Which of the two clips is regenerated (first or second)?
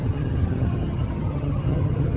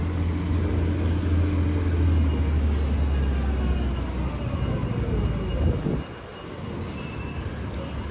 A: first